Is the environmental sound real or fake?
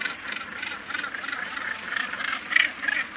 real